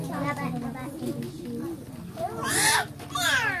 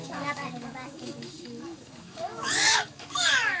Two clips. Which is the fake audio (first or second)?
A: second